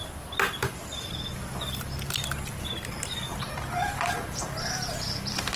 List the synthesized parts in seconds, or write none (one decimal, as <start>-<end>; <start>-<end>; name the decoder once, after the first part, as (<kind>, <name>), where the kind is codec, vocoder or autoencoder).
3.3-5.6 (vocoder, BigVGAN v2)